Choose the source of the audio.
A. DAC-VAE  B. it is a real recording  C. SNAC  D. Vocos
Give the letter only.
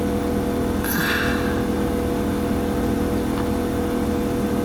B